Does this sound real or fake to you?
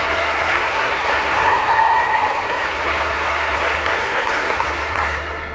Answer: fake